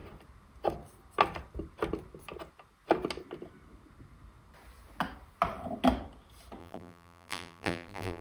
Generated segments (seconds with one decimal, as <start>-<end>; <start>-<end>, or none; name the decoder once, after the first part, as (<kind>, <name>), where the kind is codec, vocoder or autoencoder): 6.6-8.2 (vocoder, BigVGAN v2)